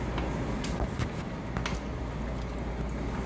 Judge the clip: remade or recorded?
recorded